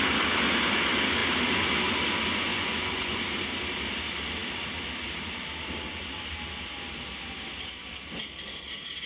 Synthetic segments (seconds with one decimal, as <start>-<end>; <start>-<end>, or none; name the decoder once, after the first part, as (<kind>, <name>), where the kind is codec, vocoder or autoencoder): 2.5-3.2 (vocoder, Vocos)